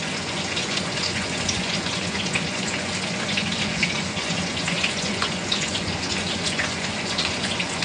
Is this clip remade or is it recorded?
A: remade